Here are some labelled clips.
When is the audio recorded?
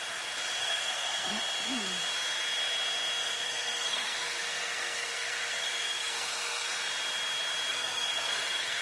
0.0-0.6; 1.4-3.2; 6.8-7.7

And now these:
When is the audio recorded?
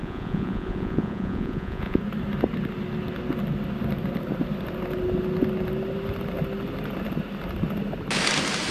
2.0-8.7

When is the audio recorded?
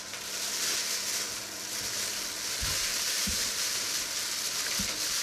0.0-3.2; 3.9-5.2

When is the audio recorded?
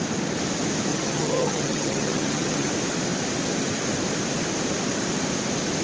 0.0-0.9; 2.7-5.8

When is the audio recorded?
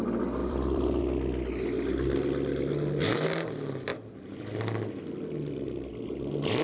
0.0-0.4; 1.0-3.9; 4.6-6.6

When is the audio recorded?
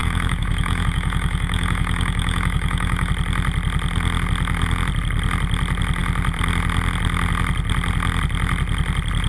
3.1-9.3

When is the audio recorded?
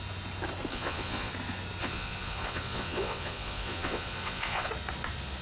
0.0-0.7; 1.3-1.8; 4.7-5.4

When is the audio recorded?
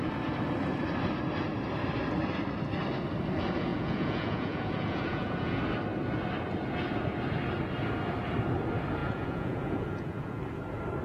0.0-3.7; 5.6-9.0; 10.4-11.0